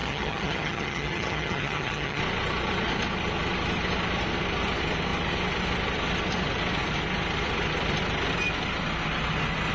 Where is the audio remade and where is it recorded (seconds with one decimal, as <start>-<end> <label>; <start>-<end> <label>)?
0.0-2.2 remade; 2.2-9.7 recorded